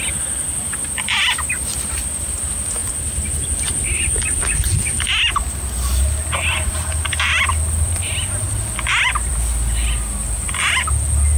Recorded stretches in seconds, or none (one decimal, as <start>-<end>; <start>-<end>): 0.0-11.4